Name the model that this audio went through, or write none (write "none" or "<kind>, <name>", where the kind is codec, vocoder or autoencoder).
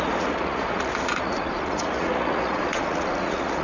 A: vocoder, Vocos